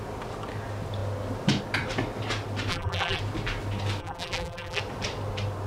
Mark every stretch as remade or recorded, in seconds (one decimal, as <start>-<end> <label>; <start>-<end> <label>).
0.0-2.7 recorded; 2.7-3.2 remade; 3.2-4.0 recorded; 4.0-4.8 remade; 4.8-5.7 recorded